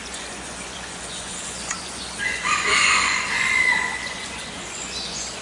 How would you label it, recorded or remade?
remade